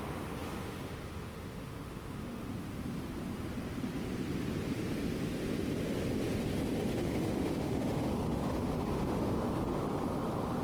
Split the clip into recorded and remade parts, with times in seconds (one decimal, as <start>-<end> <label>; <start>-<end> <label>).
0.0-2.5 remade; 2.5-7.0 recorded; 7.0-9.8 remade; 9.8-10.6 recorded

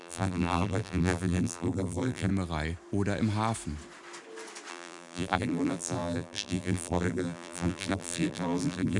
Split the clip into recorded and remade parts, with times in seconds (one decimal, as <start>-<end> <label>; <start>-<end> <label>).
0.0-2.3 remade; 2.3-4.7 recorded; 4.7-9.0 remade

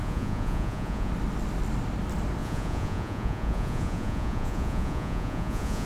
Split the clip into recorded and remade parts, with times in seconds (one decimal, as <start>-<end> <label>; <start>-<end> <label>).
0.0-1.1 remade; 1.1-2.4 recorded; 2.4-5.9 remade

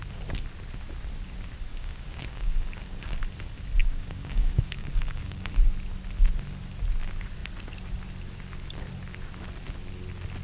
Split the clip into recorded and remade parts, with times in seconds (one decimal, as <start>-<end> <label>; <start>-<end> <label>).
0.0-1.7 recorded; 1.7-3.2 remade; 3.2-3.8 recorded; 3.8-5.5 remade; 5.5-10.4 recorded

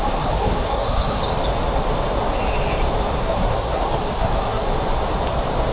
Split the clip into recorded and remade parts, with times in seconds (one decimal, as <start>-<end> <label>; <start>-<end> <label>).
0.0-1.2 remade; 1.2-3.2 recorded; 3.2-4.7 remade; 4.7-5.7 recorded

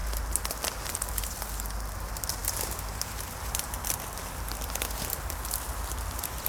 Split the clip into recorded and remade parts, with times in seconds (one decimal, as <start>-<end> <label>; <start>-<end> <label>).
0.0-6.5 recorded

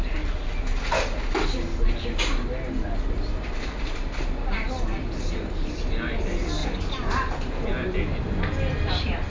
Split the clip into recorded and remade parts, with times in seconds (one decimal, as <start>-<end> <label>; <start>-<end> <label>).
0.0-9.3 recorded